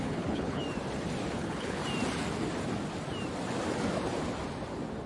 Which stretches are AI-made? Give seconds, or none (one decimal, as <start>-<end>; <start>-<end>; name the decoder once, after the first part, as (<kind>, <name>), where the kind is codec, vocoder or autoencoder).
0.0-0.6 (codec, HILCodec); 1.3-1.8